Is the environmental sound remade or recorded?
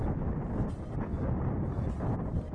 recorded